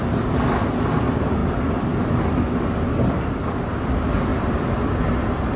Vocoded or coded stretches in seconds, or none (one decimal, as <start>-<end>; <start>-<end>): 4.3-4.9